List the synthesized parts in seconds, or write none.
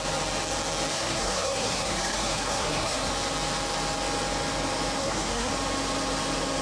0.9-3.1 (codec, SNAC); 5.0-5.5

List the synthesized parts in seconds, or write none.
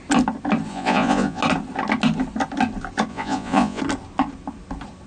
0.7-1.4 (vocoder, Vocos); 3.1-3.8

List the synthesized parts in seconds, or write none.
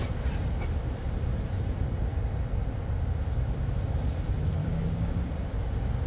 4.6-5.1 (codec, DAC)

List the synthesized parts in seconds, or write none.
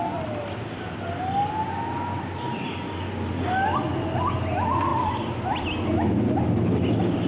none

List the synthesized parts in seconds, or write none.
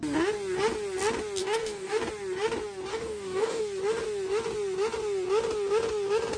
1.4-2.0 (codec, DAC); 2.9-3.6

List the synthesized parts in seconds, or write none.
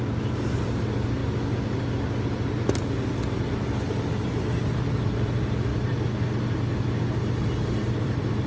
0.0-1.2 (vocoder, BigVGAN v2); 3.3-5.7; 8.0-8.5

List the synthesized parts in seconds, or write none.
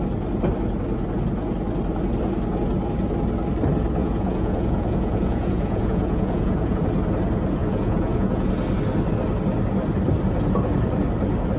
4.0-6.8 (vocoder, Vocos); 7.6-8.5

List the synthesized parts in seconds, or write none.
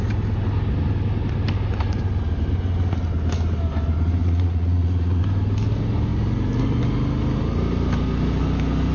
4.2-5.2 (vocoder, Vocos)